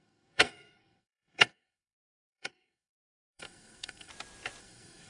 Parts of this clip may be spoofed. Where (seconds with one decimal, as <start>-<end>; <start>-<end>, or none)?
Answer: 0.0-4.1; 4.6-5.1